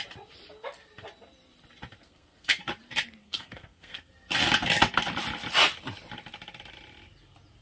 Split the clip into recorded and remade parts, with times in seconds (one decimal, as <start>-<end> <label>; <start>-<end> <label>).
0.0-2.0 recorded; 2.0-2.6 remade; 2.6-3.2 recorded; 3.2-4.1 remade; 4.1-7.6 recorded